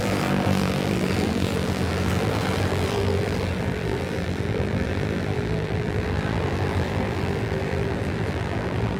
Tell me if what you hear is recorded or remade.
remade